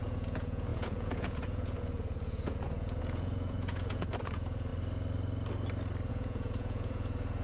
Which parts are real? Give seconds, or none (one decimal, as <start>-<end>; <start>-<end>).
4.7-6.1